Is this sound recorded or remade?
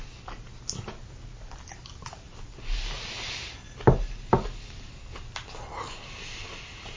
recorded